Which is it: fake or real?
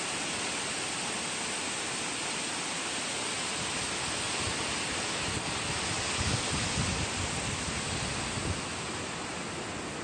real